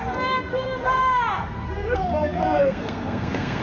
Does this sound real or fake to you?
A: fake